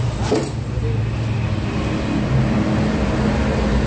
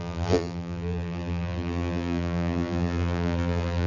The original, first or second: first